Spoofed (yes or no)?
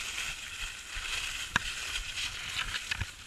no